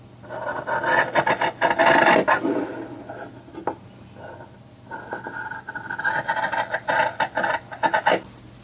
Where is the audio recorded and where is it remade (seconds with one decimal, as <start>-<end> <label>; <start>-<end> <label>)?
0.0-8.6 recorded